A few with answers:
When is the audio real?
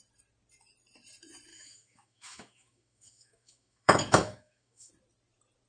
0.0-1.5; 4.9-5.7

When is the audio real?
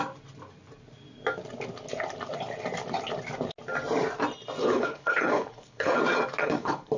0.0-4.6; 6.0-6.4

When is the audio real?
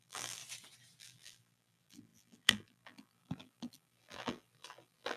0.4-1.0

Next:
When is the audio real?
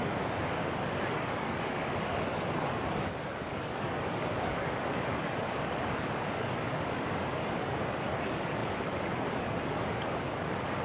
none